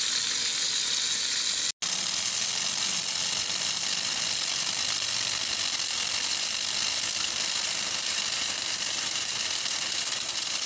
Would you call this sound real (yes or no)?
yes